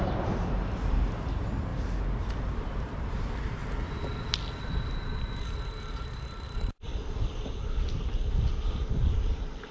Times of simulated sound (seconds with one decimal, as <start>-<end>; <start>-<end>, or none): 0.0-1.7; 2.2-3.6; 5.2-6.9; 7.5-9.7